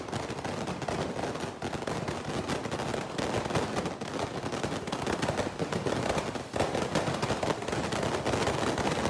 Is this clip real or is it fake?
real